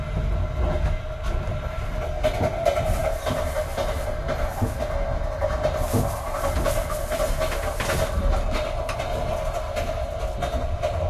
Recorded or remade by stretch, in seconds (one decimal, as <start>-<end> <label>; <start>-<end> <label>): 0.0-11.1 recorded